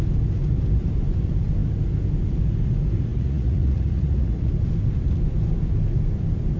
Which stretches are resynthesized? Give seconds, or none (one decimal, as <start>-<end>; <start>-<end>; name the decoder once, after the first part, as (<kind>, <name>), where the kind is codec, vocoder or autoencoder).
3.1-4.5 (vocoder, Vocos)